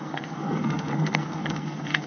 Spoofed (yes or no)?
yes